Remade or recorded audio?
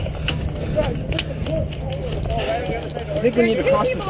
recorded